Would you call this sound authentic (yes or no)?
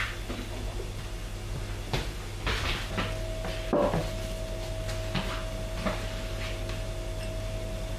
yes